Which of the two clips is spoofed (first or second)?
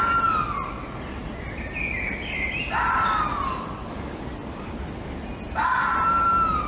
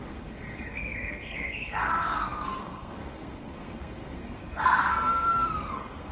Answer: second